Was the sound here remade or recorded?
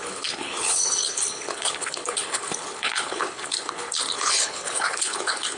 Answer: remade